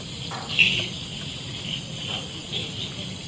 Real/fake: real